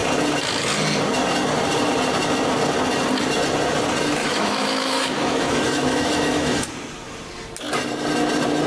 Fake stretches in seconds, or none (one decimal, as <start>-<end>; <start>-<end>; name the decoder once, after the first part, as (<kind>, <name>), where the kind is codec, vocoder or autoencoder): 4.2-6.7 (autoencoder, DAC-VAE)